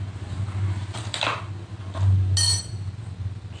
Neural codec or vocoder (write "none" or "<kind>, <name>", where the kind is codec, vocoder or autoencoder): none